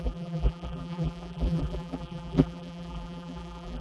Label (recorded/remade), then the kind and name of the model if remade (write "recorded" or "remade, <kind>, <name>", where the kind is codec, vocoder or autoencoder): remade, vocoder, BigVGAN v2